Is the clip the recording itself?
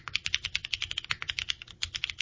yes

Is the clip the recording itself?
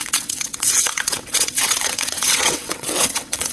no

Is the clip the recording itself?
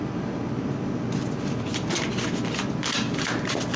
yes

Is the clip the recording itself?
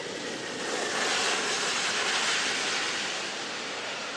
yes